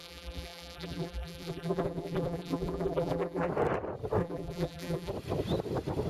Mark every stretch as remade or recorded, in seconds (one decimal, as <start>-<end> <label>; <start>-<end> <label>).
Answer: 0.0-3.5 remade; 3.5-4.2 recorded; 4.2-5.1 remade; 5.1-6.1 recorded